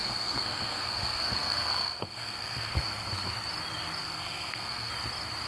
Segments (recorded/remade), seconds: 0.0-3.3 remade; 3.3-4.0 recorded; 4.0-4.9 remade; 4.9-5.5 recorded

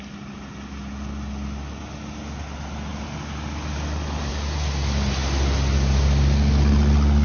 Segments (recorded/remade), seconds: 0.0-7.2 recorded

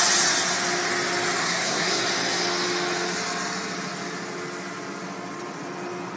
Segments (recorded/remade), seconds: 0.0-1.4 recorded; 1.4-2.0 remade; 2.0-6.2 recorded

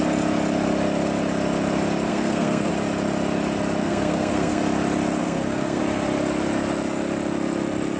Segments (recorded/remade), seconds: 0.0-2.1 recorded; 2.1-2.7 remade; 2.7-3.8 recorded; 3.8-4.6 remade; 4.6-5.2 recorded; 5.2-5.8 remade; 5.8-8.0 recorded

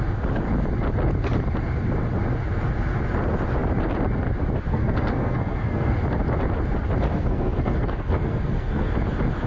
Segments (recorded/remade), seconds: 0.0-4.7 recorded; 4.7-5.9 remade; 5.9-7.1 recorded; 7.1-8.9 remade; 8.9-9.5 recorded

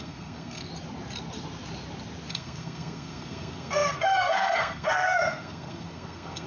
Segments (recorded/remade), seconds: 0.0-0.7 remade; 0.7-2.3 recorded; 2.3-6.5 remade

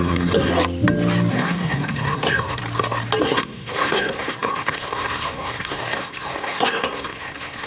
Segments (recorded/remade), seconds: 0.0-0.5 remade; 0.5-1.3 recorded; 1.3-2.6 remade; 2.6-3.2 recorded; 3.2-7.7 remade

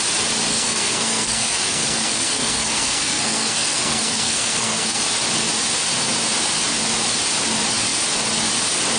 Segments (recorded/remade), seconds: 0.0-0.5 recorded; 0.5-5.0 remade; 5.0-9.0 recorded